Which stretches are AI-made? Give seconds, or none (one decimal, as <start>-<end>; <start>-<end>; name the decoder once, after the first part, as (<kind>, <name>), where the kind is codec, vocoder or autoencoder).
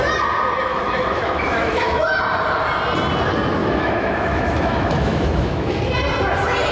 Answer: 0.7-2.2 (autoencoder, DAC-VAE); 3.6-5.8